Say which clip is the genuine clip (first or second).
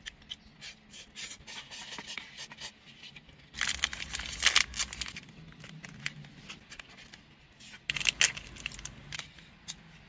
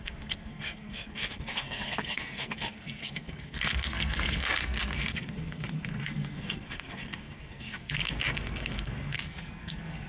first